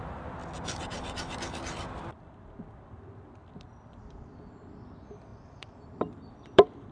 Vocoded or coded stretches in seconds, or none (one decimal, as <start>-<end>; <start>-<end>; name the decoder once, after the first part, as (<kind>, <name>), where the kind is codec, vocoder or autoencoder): 0.0-0.4 (vocoder, BigVGAN v2); 2.2-6.9